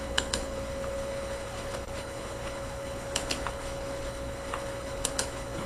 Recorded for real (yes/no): no